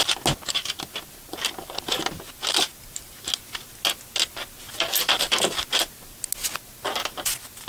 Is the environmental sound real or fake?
real